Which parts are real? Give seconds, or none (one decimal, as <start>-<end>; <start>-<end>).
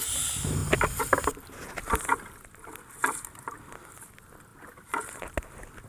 0.0-5.9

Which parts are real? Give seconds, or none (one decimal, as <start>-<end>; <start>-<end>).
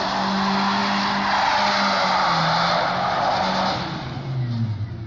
0.0-5.1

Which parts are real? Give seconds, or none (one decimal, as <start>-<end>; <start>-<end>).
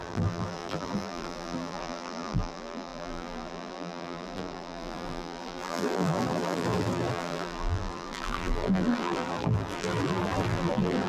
none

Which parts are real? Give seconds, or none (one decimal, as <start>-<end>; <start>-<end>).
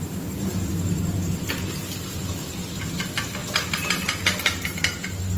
0.0-3.4; 3.9-5.4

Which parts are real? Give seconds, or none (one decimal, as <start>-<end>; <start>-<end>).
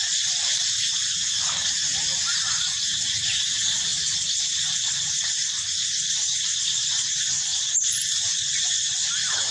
3.9-4.4; 5.4-6.0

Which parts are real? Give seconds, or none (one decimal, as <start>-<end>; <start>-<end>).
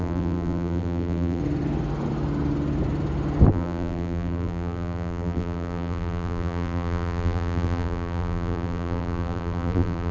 1.4-3.5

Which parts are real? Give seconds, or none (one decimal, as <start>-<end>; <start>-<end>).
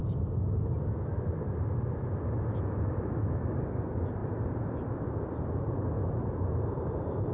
0.0-4.2